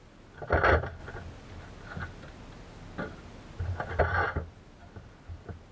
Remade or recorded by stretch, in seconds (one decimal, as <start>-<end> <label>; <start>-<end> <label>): 0.0-5.7 recorded